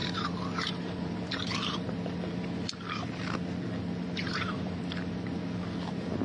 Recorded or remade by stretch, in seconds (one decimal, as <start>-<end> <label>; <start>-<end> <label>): 0.0-2.0 remade; 2.0-4.2 recorded; 4.2-4.8 remade; 4.8-6.2 recorded